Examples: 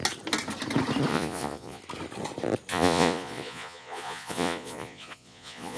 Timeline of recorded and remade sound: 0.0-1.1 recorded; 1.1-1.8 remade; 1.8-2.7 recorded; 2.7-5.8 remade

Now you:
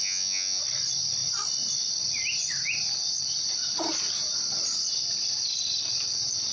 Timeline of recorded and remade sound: 0.0-0.6 remade; 0.6-6.5 recorded